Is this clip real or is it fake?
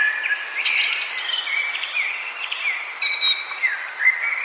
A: real